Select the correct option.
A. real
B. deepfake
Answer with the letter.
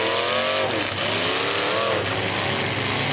A